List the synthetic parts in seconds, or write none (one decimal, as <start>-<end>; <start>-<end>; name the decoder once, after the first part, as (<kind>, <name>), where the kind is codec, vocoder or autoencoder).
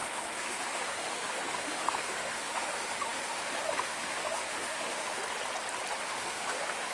0.0-5.2 (autoencoder, DAC-VAE); 6.0-6.9